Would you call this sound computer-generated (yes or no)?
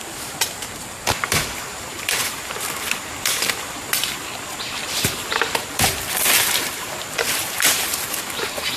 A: yes